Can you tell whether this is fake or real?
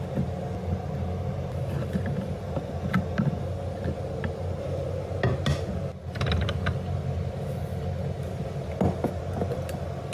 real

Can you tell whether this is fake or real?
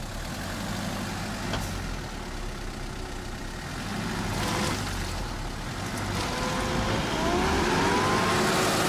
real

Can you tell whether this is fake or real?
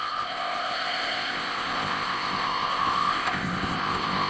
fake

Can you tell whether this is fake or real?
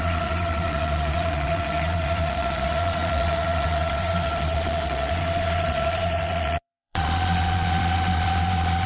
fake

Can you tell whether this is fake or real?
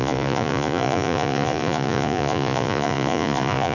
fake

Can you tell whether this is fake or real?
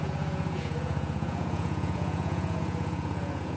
fake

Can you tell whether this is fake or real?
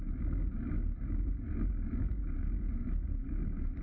real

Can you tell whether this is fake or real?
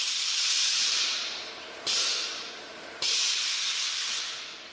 fake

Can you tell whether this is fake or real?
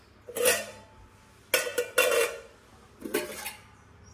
real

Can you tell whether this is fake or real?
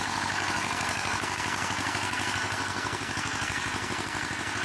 fake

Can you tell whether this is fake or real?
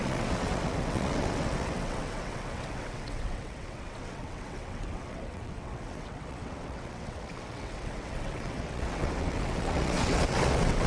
fake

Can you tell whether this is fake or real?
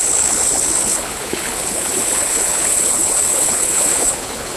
fake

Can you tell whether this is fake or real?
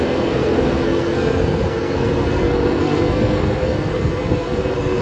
fake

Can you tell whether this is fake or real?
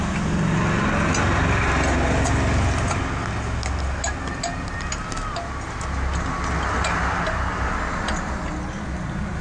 real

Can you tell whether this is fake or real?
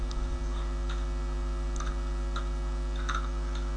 real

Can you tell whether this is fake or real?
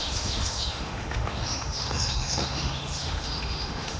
fake